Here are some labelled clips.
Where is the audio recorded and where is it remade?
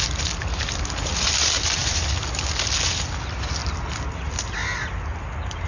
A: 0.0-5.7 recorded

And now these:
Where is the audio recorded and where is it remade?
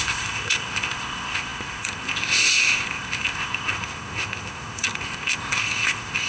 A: 0.0-6.3 remade